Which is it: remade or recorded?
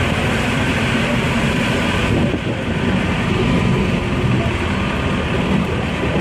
recorded